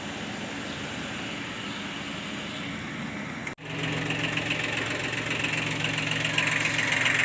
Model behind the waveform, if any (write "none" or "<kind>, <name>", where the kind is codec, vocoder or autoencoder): none